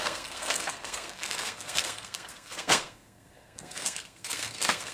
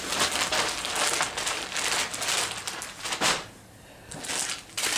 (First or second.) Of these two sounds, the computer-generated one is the first